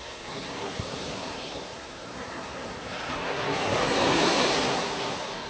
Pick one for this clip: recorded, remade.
remade